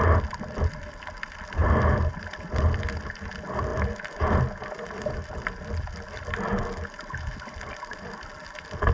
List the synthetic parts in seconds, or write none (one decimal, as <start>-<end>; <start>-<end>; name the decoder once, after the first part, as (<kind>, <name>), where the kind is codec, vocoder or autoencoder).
none